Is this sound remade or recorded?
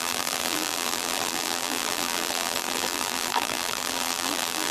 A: remade